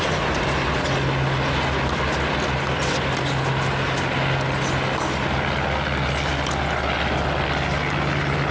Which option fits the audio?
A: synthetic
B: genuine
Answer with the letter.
B